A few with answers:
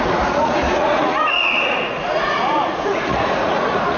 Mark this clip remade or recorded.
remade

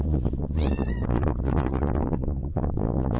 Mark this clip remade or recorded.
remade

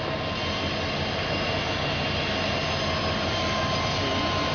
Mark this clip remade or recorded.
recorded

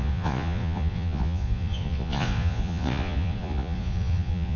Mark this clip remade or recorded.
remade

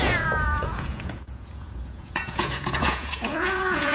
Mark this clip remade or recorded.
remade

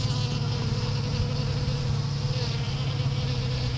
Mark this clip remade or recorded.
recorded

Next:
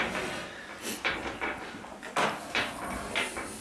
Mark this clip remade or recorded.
recorded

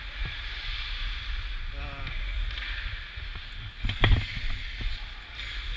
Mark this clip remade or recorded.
recorded